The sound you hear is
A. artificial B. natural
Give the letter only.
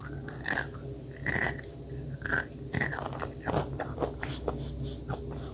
B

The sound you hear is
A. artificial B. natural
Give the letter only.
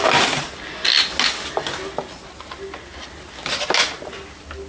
B